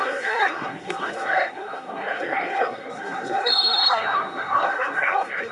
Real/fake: fake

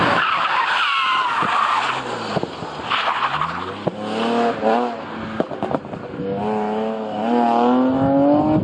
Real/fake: real